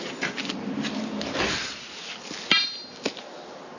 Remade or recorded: recorded